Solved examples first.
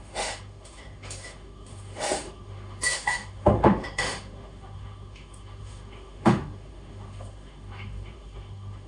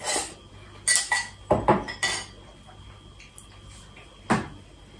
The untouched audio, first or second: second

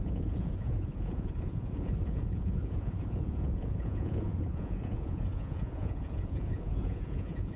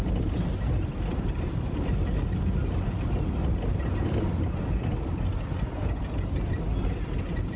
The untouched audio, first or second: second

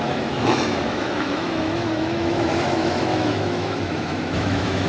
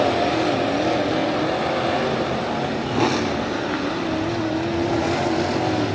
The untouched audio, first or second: second